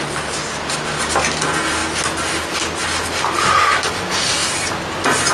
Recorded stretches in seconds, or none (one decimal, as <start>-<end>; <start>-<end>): 0.0-5.3